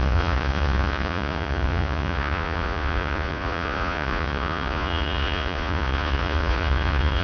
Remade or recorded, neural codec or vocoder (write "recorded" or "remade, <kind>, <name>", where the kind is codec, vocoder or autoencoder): remade, vocoder, Vocos